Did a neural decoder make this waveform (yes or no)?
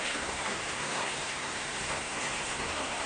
yes